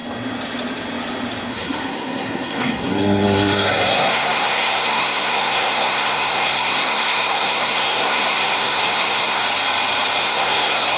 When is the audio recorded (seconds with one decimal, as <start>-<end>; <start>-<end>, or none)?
0.0-1.5; 9.4-10.2